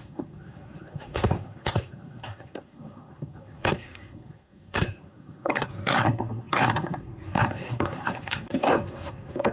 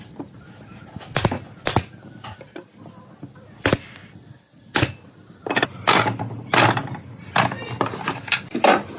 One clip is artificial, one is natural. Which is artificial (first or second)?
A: first